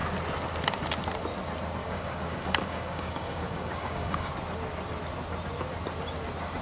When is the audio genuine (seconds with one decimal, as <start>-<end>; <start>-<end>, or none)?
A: 0.0-1.8; 4.3-6.6